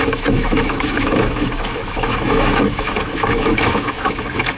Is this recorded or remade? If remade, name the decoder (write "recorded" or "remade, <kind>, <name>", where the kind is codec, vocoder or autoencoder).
remade, autoencoder, DAC-VAE